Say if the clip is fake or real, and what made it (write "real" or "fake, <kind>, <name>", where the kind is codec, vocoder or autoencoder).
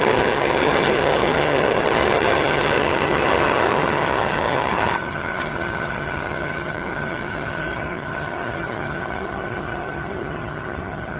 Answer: fake, vocoder, HiFi-GAN